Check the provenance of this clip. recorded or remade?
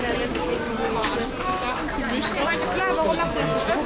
recorded